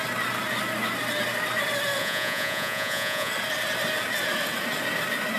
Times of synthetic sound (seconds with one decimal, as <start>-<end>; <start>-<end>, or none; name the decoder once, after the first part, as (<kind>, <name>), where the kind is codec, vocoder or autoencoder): 2.0-3.3 (vocoder, Vocos)